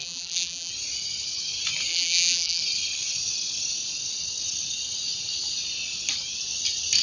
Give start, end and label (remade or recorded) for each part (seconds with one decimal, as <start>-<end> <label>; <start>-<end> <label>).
0.0-0.7 remade; 0.7-1.9 recorded; 1.9-2.6 remade; 2.6-7.0 recorded